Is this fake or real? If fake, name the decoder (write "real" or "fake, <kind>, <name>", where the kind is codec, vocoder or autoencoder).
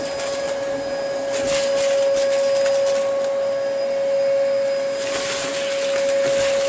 real